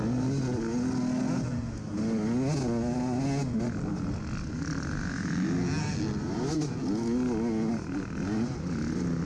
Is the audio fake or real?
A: real